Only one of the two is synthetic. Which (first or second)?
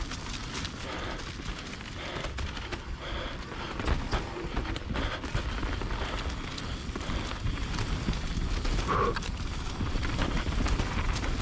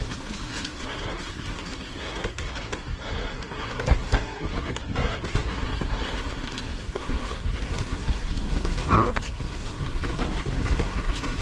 second